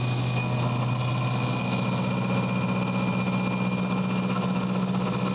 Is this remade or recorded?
recorded